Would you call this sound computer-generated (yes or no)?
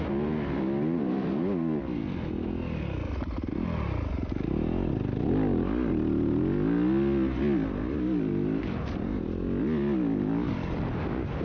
no